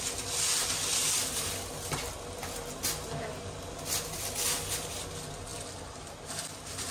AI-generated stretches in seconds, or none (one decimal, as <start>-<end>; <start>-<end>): none